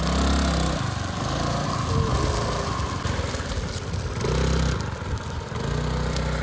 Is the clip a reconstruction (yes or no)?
no